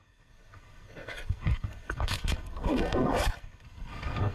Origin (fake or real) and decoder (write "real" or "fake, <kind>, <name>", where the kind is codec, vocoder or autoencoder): fake, codec, SNAC